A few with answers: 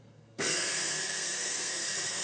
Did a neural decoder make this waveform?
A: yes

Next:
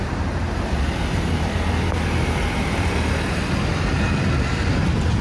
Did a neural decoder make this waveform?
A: no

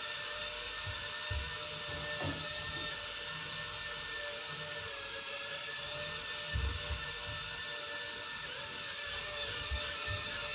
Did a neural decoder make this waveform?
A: no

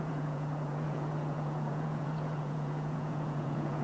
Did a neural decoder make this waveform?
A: yes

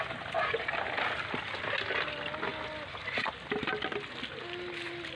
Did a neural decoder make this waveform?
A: no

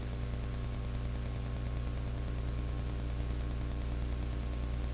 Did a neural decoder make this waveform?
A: no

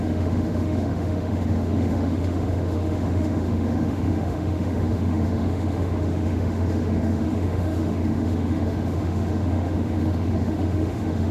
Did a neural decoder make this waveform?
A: yes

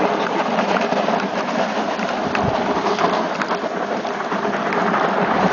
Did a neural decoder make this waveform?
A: no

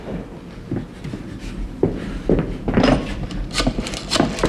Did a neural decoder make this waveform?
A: yes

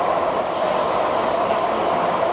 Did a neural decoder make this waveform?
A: no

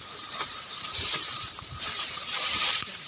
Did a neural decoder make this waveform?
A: yes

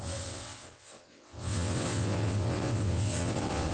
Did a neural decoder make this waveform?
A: yes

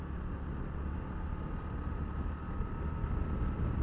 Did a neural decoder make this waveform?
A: no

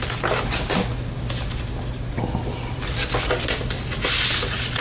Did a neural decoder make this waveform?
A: no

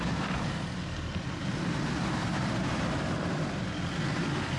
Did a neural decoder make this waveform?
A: no